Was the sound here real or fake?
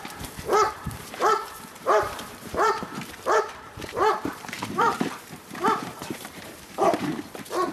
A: fake